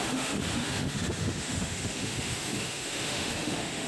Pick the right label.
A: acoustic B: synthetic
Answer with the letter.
B